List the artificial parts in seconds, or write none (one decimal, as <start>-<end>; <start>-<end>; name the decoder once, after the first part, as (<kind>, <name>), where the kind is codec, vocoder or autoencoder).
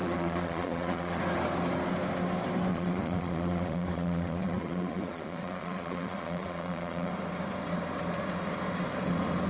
0.0-1.2 (vocoder, Vocos); 2.7-7.1